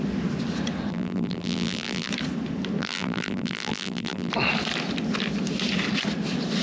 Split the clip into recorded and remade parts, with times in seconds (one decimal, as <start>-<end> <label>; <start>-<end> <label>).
0.0-0.9 recorded; 0.9-2.1 remade; 2.1-2.8 recorded; 2.8-4.3 remade; 4.3-6.6 recorded